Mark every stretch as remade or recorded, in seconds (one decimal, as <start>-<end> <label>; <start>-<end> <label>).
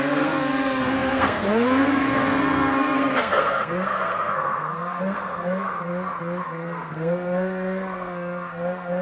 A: 0.0-5.9 remade; 5.9-6.4 recorded; 6.4-9.0 remade